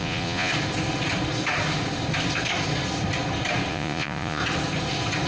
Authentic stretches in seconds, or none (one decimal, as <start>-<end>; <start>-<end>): 0.5-3.7; 4.4-5.3